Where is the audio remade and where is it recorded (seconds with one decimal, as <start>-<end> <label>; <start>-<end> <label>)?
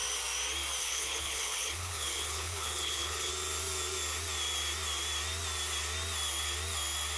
0.0-0.8 recorded; 0.8-3.3 remade; 3.3-7.2 recorded